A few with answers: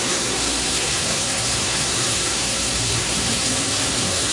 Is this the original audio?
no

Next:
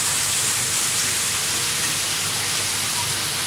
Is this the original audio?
yes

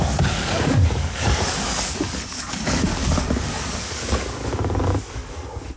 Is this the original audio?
no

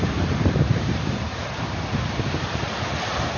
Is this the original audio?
no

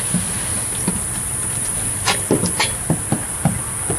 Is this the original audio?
yes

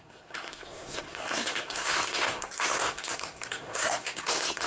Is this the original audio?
no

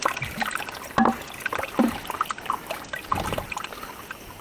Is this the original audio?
no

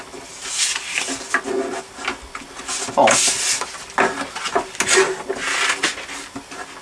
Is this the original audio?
yes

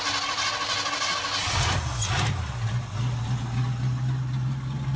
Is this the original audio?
yes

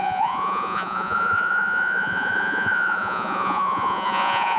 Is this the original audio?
no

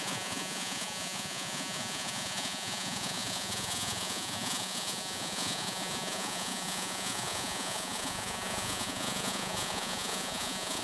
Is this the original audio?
no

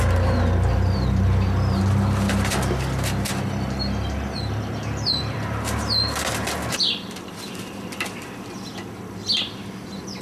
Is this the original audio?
yes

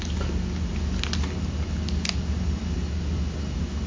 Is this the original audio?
yes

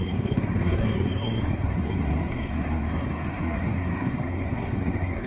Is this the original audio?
no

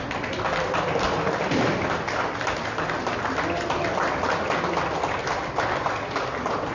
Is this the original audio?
yes